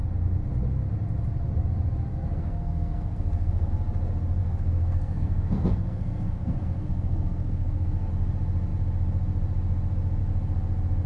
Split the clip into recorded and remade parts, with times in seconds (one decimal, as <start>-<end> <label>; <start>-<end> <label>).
0.0-2.1 recorded; 2.1-3.7 remade; 3.7-4.4 recorded; 4.4-8.1 remade; 8.1-11.1 recorded